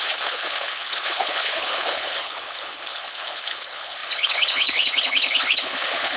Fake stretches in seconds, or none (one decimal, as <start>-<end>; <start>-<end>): 0.0-6.2